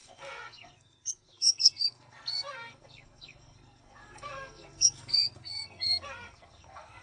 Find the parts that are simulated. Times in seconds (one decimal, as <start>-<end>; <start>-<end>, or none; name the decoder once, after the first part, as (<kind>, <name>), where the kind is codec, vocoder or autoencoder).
0.0-7.0 (codec, SNAC)